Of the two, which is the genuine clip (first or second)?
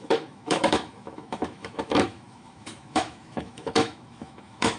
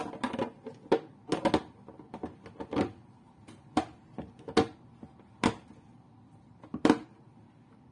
second